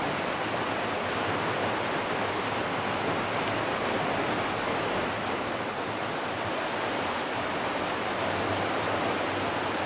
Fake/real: real